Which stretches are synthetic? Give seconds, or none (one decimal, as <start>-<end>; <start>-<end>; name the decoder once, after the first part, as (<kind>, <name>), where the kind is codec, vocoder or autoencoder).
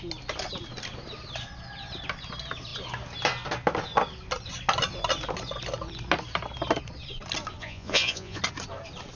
7.6-8.4 (vocoder, Vocos)